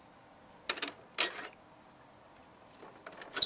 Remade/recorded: recorded